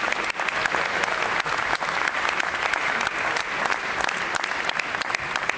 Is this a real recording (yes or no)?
yes